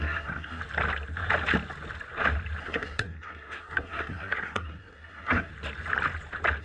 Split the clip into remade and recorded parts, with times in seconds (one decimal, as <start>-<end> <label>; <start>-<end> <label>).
0.0-0.6 remade; 0.6-2.6 recorded; 2.6-5.5 remade; 5.5-6.6 recorded